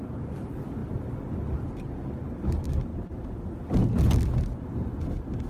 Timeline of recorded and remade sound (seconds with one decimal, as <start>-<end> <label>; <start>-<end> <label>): 0.0-5.5 recorded